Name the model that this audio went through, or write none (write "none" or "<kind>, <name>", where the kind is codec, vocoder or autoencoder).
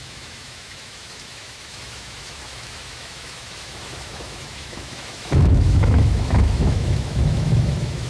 autoencoder, DAC-VAE